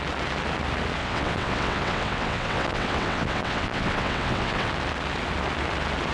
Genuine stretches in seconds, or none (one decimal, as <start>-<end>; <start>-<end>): 0.0-1.0; 4.7-6.1